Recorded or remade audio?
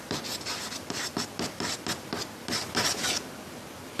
recorded